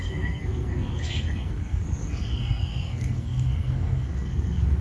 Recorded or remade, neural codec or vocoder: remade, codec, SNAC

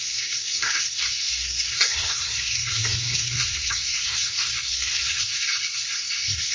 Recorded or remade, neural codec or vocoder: remade, codec, SNAC